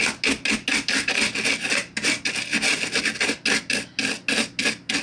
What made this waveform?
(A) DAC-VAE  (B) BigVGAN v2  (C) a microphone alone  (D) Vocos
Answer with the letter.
C